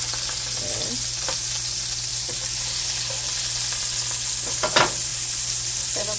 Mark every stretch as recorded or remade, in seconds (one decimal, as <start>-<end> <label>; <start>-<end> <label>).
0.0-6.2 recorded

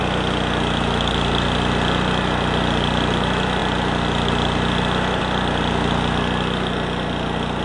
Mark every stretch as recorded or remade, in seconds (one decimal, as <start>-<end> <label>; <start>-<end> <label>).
0.0-7.6 recorded

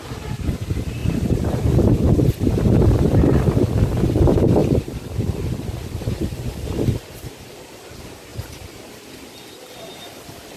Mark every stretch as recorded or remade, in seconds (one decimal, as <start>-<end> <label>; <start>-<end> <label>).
0.0-4.6 recorded; 4.6-6.5 remade; 6.5-10.6 recorded